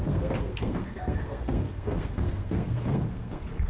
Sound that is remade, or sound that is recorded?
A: remade